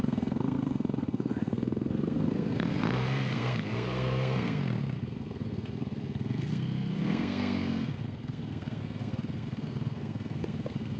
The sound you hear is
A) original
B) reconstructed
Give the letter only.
B